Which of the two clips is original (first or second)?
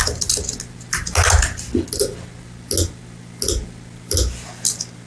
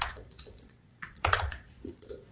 first